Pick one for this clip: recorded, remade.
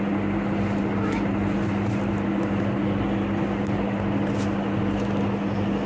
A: recorded